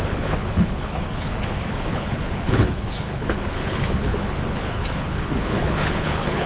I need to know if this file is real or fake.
fake